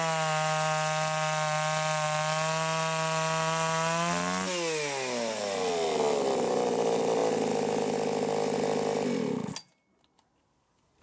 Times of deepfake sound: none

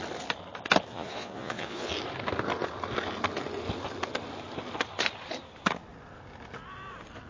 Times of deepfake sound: 0.9-1.9 (vocoder, Vocos)

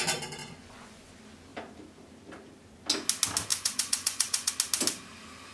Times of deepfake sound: 0.4-1.1 (vocoder, Vocos); 3.5-4.5

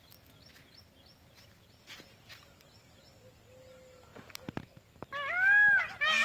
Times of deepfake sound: none

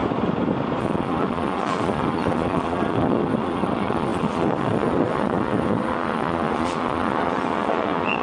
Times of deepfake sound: 0.8-8.2 (vocoder, Vocos)

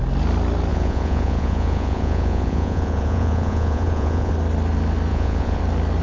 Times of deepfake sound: 0.7-4.3 (vocoder, Vocos); 5.1-5.6

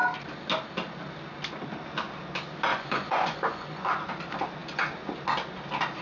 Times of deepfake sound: 2.7-4.0 (vocoder, Vocos)